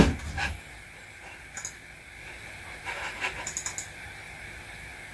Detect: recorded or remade recorded